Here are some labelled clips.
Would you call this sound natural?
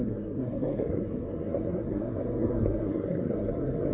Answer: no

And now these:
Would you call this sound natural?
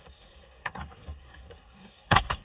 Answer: no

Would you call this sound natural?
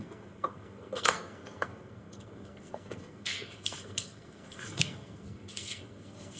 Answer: no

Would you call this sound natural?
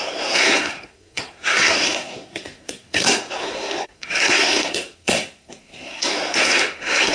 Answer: no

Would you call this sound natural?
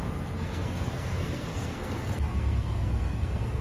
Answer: no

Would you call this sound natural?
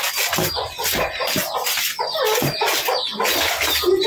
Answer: yes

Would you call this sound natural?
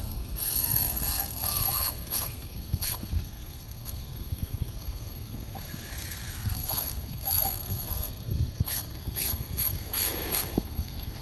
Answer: no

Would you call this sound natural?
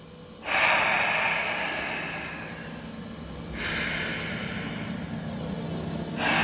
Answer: yes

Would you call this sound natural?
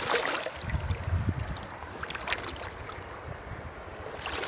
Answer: yes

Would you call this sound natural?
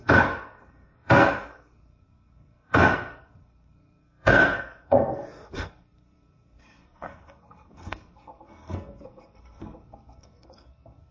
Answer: no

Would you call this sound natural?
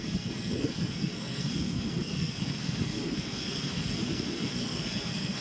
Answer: no